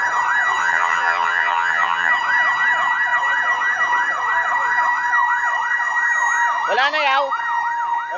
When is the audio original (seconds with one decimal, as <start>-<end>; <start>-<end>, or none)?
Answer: 0.0-0.6; 2.1-8.2